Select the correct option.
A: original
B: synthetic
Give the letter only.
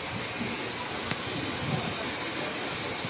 A